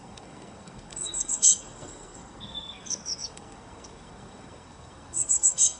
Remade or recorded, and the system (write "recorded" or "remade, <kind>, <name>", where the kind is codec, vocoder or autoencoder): remade, codec, SNAC